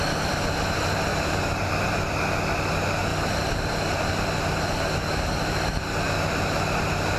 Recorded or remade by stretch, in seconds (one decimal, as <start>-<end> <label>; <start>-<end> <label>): 0.0-7.2 recorded